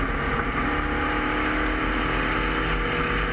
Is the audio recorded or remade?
recorded